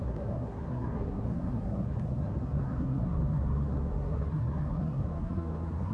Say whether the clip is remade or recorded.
remade